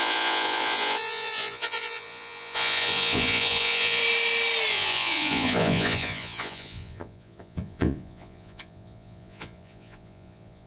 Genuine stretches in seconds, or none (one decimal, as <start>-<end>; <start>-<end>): 4.0-4.7